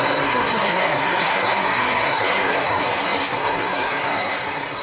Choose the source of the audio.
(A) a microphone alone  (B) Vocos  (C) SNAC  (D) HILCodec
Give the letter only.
C